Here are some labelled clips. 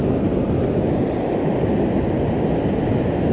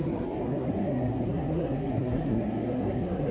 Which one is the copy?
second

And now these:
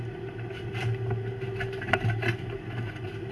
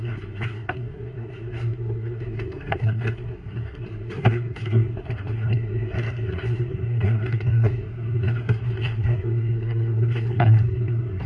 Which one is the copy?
second